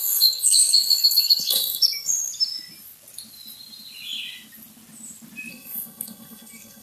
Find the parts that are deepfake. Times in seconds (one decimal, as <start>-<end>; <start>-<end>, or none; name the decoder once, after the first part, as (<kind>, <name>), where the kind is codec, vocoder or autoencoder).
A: 0.0-2.3 (codec, SNAC); 5.5-6.8